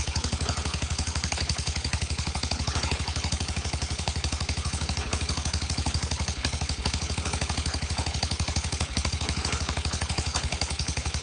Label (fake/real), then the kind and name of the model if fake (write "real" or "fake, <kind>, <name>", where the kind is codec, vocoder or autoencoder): fake, codec, HILCodec